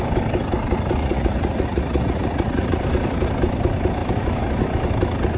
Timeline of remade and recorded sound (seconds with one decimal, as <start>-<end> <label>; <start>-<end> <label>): 0.0-1.0 recorded; 1.0-2.8 remade; 2.8-5.4 recorded

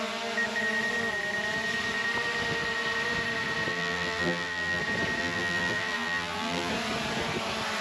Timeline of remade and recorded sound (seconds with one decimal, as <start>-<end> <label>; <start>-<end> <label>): 0.0-3.7 recorded; 3.7-4.8 remade; 4.8-5.2 recorded; 5.2-6.7 remade; 6.7-7.8 recorded

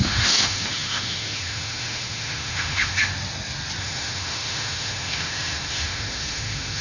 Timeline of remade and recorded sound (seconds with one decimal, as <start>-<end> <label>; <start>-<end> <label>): 0.0-3.1 remade; 3.1-3.8 recorded; 3.8-6.8 remade

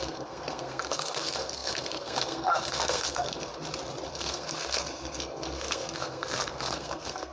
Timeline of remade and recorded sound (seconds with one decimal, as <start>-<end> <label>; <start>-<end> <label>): 0.0-3.5 remade; 3.5-4.1 recorded; 4.1-7.3 remade

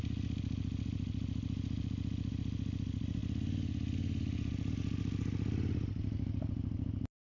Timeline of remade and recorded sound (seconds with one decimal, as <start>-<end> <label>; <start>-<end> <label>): 0.0-7.2 recorded

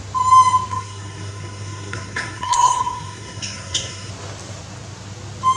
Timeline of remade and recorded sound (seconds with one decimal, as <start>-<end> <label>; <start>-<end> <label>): 0.0-0.7 recorded; 0.7-4.1 remade; 4.1-5.6 recorded